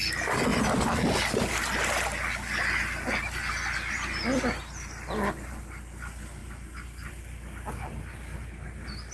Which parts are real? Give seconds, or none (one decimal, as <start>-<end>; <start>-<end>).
0.0-6.4; 7.1-9.1